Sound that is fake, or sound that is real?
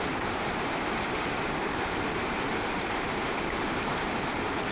fake